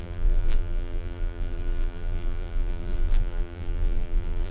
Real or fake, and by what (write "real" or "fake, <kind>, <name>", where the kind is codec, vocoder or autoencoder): fake, vocoder, BigVGAN v2